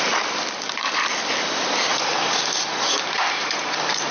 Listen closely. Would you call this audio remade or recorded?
remade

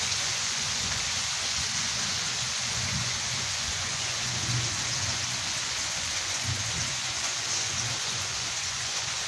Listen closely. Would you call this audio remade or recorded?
remade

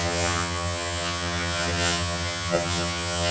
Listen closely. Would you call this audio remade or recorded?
remade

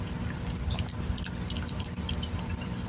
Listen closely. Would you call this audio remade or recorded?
recorded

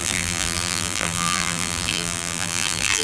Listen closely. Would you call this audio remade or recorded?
remade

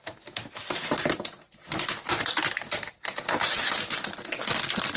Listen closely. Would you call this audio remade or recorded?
recorded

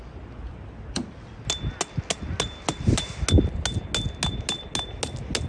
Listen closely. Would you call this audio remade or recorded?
recorded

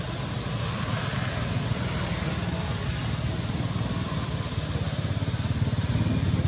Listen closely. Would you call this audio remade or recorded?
recorded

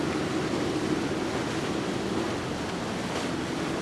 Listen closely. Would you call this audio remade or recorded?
recorded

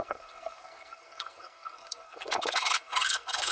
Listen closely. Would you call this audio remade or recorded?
remade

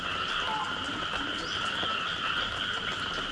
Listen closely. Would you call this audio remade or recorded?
recorded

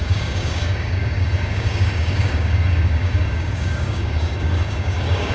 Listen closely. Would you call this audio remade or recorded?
remade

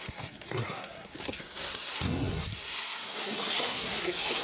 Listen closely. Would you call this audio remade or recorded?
remade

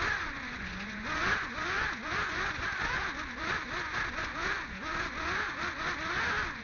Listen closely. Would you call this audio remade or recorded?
remade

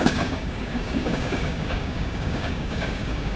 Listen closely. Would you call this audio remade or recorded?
remade